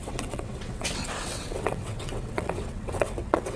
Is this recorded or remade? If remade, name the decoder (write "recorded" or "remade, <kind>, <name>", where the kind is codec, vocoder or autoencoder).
remade, vocoder, WaveNeXt